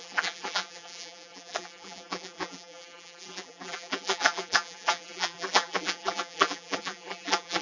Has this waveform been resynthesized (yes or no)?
yes